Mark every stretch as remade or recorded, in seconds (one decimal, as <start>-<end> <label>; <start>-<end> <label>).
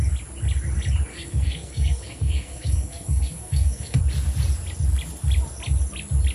0.0-1.1 recorded; 1.1-4.0 remade; 4.0-6.3 recorded